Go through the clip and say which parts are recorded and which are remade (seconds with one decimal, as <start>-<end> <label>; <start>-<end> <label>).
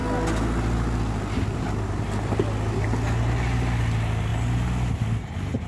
0.0-5.7 recorded